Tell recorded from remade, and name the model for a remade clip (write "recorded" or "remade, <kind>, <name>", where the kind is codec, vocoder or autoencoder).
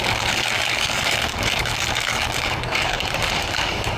remade, codec, DAC